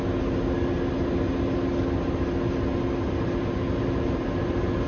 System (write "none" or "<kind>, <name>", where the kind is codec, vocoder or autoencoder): none